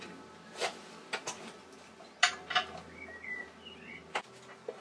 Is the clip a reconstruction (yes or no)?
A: no